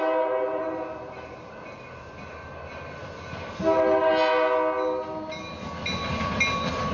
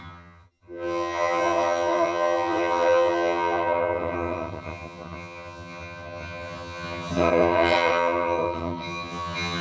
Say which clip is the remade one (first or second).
second